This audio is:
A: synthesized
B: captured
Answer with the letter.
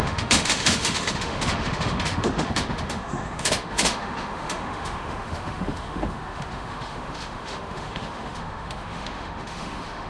A